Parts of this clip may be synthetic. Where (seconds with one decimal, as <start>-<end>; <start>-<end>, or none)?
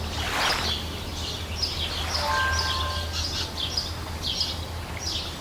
none